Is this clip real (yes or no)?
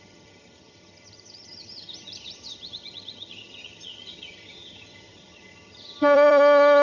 no